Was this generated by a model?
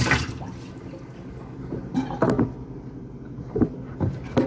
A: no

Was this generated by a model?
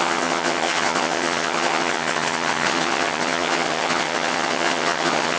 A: yes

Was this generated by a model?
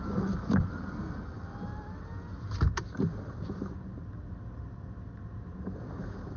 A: no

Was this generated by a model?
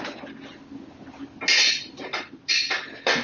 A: no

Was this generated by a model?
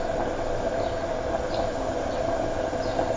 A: no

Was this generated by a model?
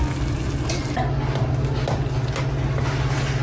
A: no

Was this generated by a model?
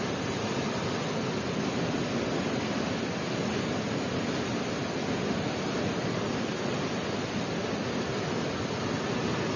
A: no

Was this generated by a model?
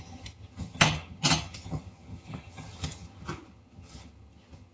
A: yes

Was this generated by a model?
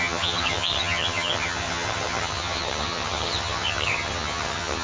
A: yes